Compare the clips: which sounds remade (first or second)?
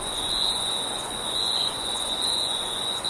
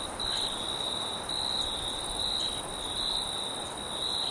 first